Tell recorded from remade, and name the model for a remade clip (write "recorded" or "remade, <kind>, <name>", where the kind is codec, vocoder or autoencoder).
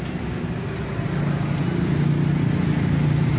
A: recorded